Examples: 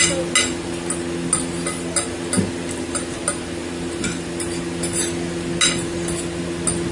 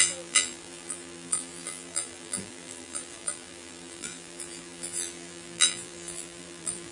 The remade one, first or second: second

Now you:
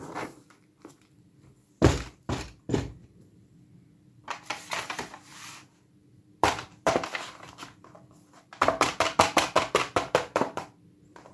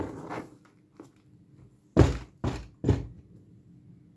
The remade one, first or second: first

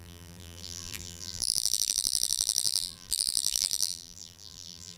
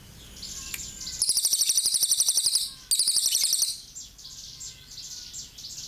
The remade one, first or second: first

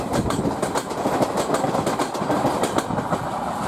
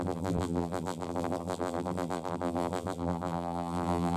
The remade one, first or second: second